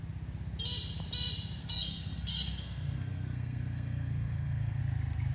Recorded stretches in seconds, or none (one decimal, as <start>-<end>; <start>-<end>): 0.0-1.6; 4.8-5.3

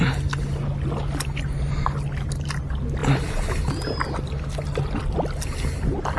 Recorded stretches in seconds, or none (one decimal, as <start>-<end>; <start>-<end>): 0.0-6.2